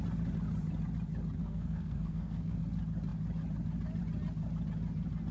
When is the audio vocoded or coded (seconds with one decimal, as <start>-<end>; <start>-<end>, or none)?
1.4-2.6